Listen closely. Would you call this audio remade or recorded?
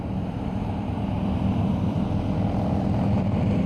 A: remade